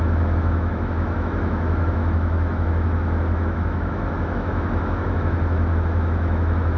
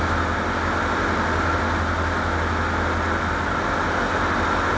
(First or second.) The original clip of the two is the second